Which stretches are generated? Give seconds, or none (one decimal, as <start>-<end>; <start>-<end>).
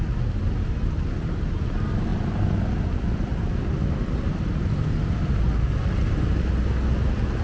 none